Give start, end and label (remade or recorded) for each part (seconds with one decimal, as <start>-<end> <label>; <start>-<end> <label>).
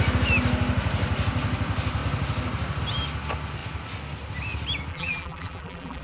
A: 0.0-4.9 recorded; 4.9-6.0 remade